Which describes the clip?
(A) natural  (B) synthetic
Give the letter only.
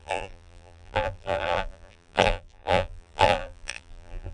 B